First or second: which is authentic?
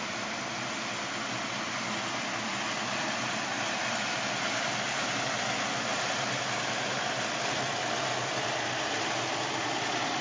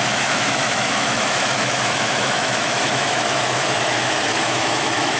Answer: first